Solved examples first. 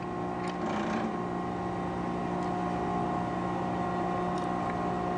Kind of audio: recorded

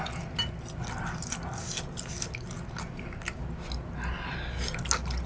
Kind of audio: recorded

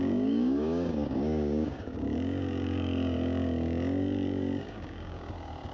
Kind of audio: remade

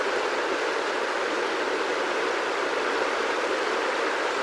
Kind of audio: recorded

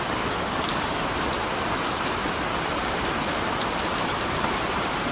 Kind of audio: recorded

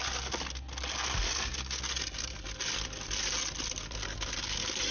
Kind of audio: recorded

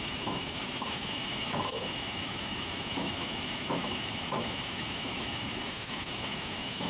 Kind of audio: remade